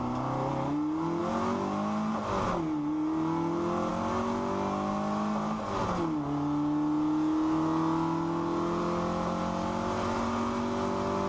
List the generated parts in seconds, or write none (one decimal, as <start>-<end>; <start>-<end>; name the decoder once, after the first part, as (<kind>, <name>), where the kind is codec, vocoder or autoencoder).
none